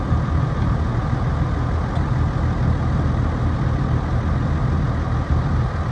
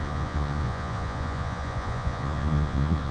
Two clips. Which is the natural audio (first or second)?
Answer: first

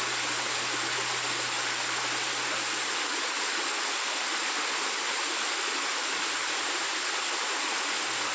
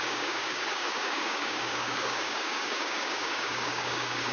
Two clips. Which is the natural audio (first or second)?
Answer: first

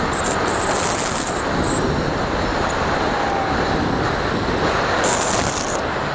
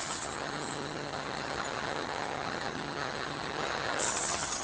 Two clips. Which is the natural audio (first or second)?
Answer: first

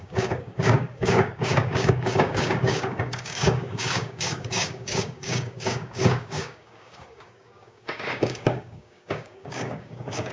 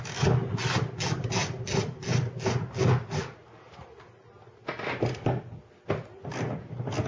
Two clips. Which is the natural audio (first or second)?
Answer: second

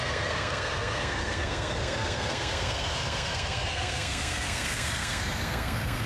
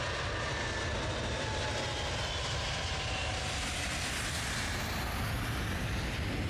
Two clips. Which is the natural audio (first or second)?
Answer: second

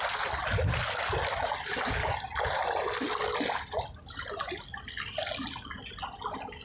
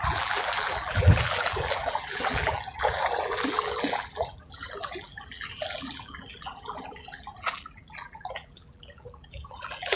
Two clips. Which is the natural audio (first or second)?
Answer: first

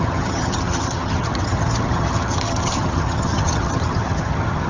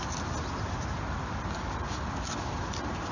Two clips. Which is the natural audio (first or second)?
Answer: second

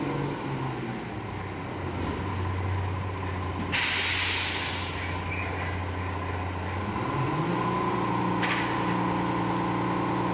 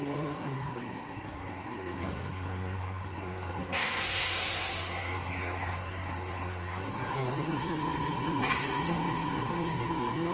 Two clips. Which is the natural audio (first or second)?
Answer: first